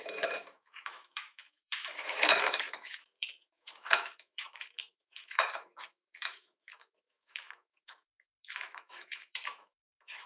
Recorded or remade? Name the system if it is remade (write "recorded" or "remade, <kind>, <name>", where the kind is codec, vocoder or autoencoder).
remade, autoencoder, DAC-VAE